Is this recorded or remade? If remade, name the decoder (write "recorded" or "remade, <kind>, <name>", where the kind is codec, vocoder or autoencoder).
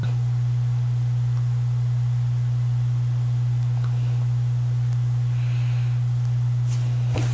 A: recorded